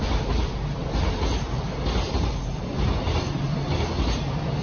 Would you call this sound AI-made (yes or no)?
no